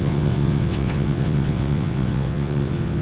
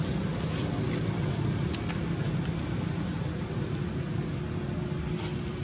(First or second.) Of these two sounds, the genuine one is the second